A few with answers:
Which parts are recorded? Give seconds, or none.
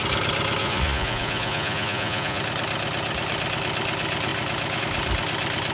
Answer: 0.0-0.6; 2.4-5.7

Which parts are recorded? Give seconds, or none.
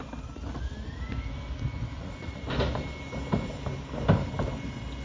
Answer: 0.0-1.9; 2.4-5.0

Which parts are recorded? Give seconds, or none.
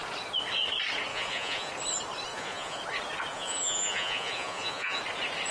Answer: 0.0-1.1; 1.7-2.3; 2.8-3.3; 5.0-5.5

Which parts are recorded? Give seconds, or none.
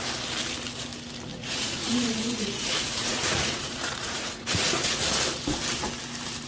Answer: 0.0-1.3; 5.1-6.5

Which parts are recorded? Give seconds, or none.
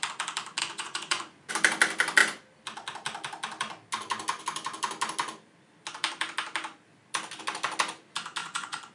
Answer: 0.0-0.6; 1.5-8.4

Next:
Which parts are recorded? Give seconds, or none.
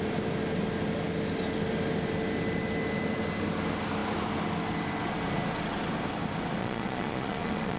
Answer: 0.0-6.6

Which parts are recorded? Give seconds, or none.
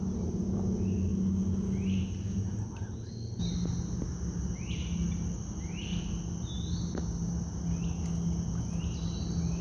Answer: 0.0-9.6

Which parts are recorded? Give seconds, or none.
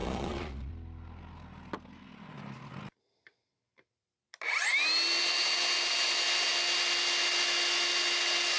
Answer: 0.7-8.6